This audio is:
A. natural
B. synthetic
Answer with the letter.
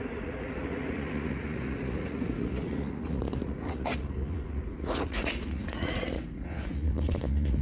B